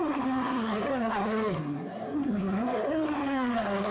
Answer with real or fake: fake